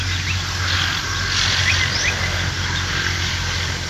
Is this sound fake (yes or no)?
no